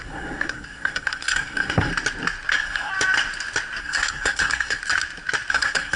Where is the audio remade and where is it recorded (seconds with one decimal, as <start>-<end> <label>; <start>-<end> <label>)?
0.0-1.9 remade; 1.9-2.5 recorded; 2.5-2.9 remade; 2.9-3.8 recorded; 3.8-4.8 remade; 4.8-5.5 recorded; 5.5-6.0 remade